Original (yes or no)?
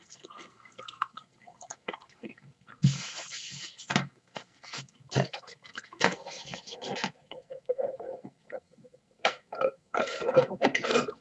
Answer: no